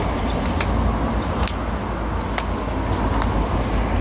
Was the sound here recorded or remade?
recorded